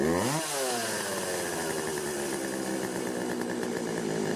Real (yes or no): yes